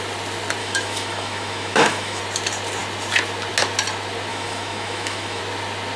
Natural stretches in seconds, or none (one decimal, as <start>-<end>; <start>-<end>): 0.0-0.6; 2.2-4.3; 5.4-6.0